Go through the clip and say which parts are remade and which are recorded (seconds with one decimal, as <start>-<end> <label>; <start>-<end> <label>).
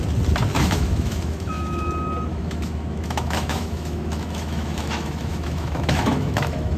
0.0-0.5 recorded; 0.5-1.9 remade; 1.9-2.3 recorded; 2.3-6.8 remade